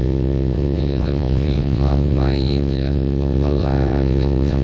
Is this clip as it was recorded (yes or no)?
no